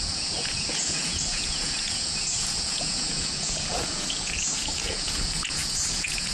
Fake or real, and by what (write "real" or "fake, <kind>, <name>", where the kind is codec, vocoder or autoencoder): fake, vocoder, Vocos